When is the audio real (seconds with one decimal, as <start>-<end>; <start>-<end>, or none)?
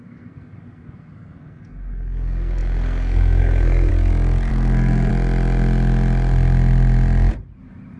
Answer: 3.9-4.5; 5.1-8.0